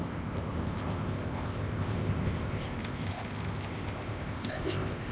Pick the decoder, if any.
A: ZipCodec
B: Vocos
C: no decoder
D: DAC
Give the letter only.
A